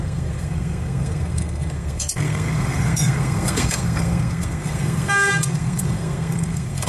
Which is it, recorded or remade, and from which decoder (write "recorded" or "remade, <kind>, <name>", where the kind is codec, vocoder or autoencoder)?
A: remade, codec, SNAC